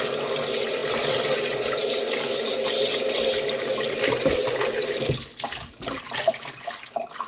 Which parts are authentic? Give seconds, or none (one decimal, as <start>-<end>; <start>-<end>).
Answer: 0.0-7.3